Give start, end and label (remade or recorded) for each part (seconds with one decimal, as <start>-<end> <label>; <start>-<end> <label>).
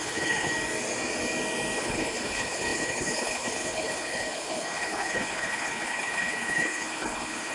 0.0-0.5 remade; 0.5-1.8 recorded; 1.8-7.5 remade